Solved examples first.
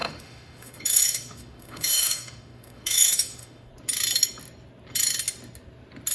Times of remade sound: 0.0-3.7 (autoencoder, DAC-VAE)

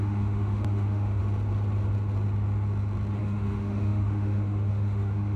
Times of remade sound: 0.0-1.2 (autoencoder, DAC-VAE); 3.2-5.4

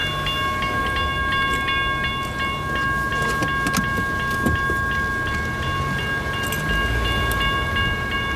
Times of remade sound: none